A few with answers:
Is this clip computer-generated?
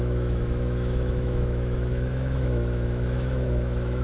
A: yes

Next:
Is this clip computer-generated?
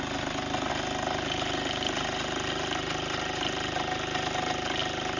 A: no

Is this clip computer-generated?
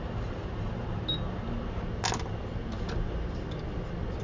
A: no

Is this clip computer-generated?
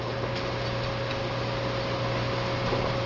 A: no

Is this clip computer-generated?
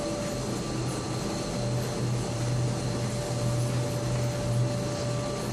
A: no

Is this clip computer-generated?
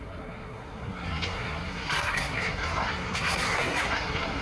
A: yes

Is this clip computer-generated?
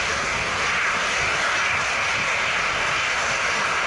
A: no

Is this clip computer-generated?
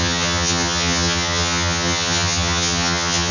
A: yes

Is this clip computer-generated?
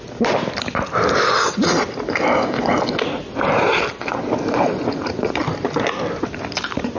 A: no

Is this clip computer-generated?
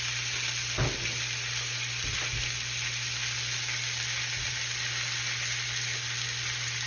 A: no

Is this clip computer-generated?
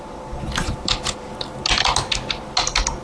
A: no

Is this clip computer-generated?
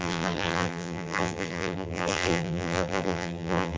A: yes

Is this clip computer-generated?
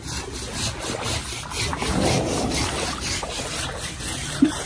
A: no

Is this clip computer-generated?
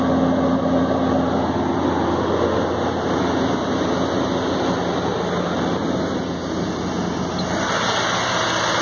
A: no